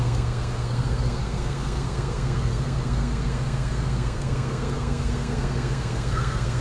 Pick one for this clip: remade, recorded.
remade